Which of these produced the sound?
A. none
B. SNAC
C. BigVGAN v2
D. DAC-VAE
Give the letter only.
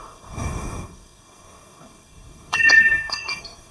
B